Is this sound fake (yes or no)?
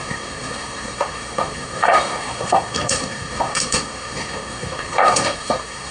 yes